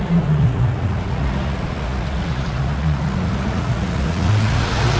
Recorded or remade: remade